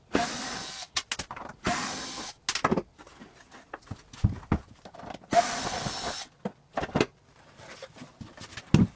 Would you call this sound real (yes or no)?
yes